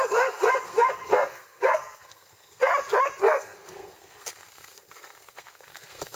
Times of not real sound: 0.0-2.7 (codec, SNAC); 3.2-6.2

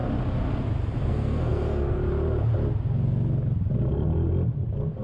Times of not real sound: 1.0-2.0 (codec, SNAC)

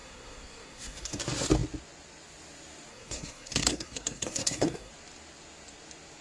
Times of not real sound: 0.0-1.2 (codec, SNAC); 2.9-4.9